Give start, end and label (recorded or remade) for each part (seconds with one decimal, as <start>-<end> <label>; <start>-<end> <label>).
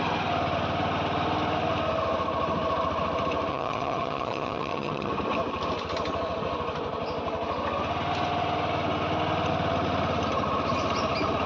0.0-3.5 recorded; 3.5-5.1 remade; 5.1-11.5 recorded